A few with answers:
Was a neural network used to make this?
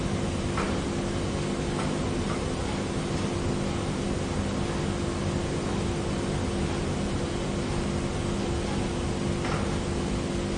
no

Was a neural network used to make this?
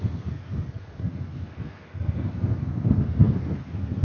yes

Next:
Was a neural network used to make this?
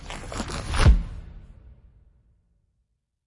no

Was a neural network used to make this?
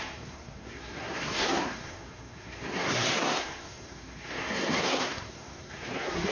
yes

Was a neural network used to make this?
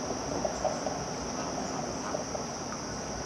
no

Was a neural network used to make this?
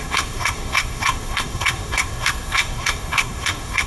yes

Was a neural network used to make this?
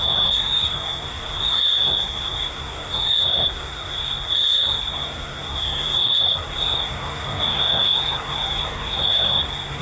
yes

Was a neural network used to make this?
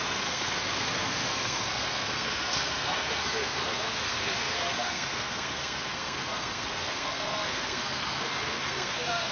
yes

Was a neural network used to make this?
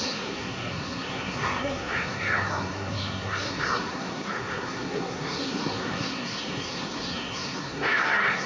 yes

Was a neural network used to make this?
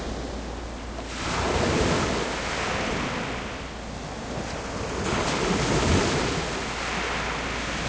no